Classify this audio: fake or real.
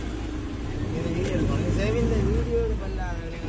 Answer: real